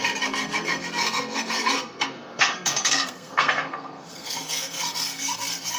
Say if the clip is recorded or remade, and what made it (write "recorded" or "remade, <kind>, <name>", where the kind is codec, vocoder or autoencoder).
remade, codec, SNAC